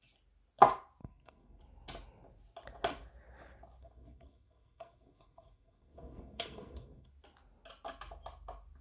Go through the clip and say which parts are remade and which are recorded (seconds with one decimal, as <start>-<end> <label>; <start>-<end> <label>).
0.0-1.0 recorded; 1.0-1.6 remade; 1.6-3.8 recorded; 3.8-7.1 remade; 7.1-8.8 recorded